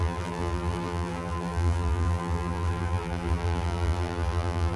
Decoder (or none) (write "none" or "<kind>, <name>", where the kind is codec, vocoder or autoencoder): vocoder, BigVGAN v2